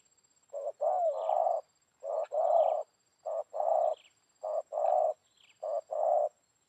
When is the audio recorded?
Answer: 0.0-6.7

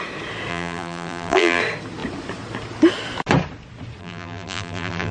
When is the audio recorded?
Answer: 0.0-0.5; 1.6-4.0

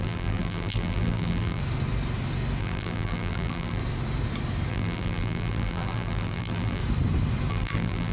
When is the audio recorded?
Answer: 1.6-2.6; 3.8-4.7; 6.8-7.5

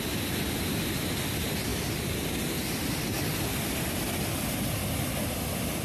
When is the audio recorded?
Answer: 0.0-5.8